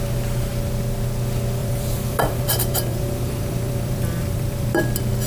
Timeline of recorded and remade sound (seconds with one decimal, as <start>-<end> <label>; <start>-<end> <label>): 0.0-1.6 recorded; 1.6-4.8 remade; 4.8-5.3 recorded